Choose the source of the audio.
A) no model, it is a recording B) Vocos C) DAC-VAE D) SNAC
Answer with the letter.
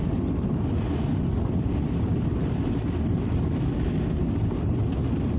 A